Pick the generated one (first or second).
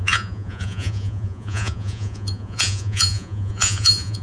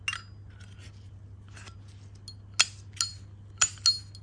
first